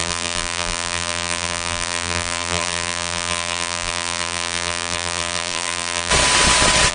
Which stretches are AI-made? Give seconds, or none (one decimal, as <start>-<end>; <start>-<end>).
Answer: 0.0-6.1